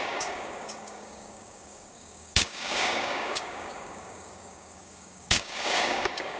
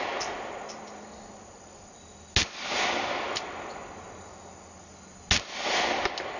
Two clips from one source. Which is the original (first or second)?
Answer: second